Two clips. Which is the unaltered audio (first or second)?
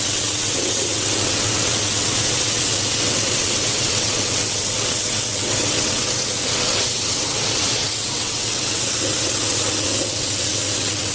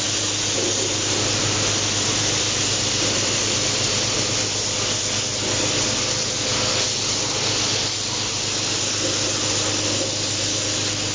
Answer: second